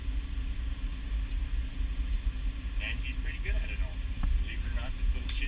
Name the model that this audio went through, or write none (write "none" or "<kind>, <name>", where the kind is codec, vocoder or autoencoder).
none